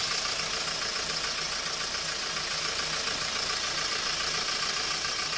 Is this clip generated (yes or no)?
no